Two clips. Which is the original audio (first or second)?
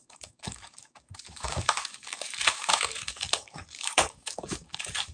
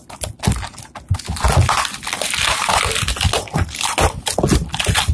second